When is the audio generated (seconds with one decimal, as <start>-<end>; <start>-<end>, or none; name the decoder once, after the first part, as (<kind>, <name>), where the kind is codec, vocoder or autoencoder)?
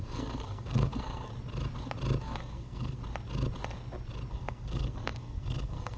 0.0-1.3 (codec, SNAC); 2.2-3.0; 4.3-6.0